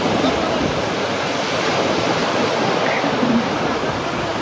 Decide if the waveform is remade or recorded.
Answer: recorded